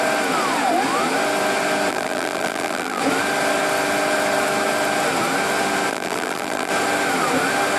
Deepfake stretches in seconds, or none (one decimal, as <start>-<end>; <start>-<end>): 1.9-3.0; 5.9-6.7